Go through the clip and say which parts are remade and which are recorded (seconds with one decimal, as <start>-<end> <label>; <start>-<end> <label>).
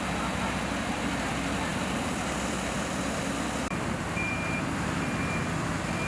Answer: 0.0-6.1 remade